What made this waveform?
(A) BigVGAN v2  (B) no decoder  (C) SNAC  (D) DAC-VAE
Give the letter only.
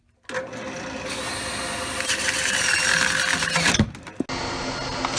B